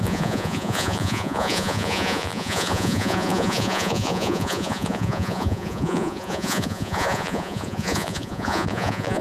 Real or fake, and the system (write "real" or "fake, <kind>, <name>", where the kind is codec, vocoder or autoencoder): fake, vocoder, Vocos